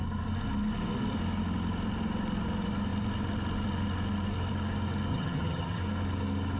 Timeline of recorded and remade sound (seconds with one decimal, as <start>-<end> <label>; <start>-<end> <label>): 0.0-5.1 recorded; 5.1-5.8 remade; 5.8-6.6 recorded